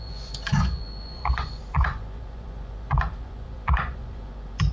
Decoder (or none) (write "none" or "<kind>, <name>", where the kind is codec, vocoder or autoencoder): vocoder, Vocos